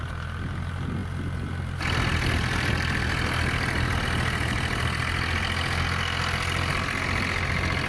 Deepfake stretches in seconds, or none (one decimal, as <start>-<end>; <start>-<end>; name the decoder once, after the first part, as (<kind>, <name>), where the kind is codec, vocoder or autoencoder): none